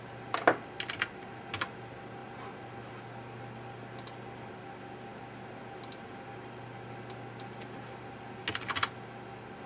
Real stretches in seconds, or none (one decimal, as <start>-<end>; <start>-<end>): 0.0-9.7